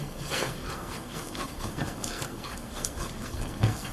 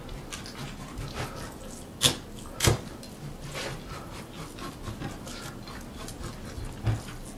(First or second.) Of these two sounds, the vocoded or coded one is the first